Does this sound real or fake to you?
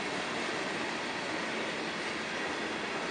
real